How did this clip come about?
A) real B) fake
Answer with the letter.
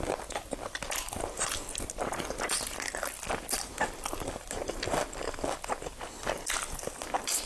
A